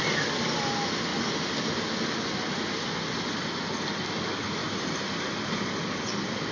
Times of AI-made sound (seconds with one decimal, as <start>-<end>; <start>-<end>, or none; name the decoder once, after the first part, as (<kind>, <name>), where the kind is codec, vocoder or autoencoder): 1.1-1.6 (vocoder, BigVGAN v2); 4.6-5.1